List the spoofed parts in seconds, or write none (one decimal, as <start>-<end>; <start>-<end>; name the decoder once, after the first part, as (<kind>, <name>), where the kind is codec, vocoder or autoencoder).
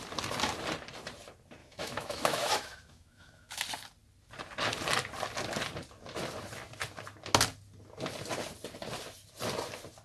1.6-3.6 (autoencoder, DAC-VAE)